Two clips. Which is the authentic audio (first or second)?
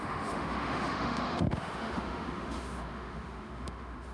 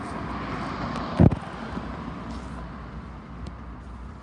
second